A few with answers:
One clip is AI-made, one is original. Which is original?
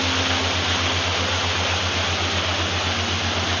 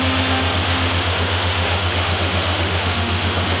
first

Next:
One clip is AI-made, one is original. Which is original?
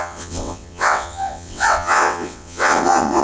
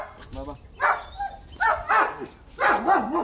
second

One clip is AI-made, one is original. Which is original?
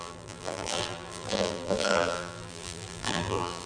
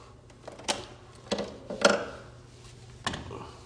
second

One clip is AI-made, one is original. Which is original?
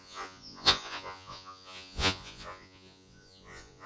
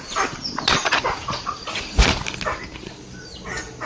second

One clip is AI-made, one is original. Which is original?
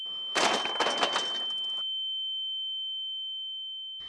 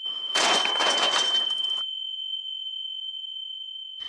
first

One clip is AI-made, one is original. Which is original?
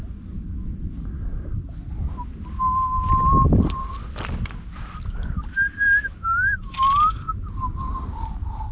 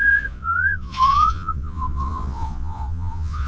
first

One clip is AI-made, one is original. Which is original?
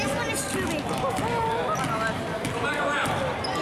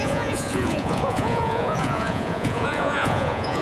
first